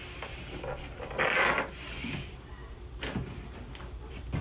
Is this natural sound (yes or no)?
yes